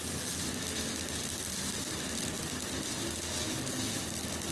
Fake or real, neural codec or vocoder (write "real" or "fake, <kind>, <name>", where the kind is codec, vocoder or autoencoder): real